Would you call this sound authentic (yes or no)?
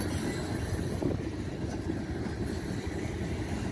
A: yes